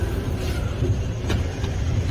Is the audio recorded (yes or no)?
no